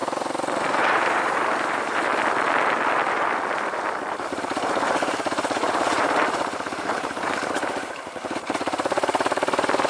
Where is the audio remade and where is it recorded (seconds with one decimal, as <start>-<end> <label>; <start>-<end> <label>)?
0.0-0.8 recorded; 0.8-2.1 remade; 2.1-4.1 recorded; 4.1-9.9 remade